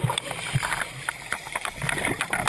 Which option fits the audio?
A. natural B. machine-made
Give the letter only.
A